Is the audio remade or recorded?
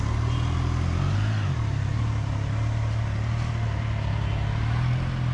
recorded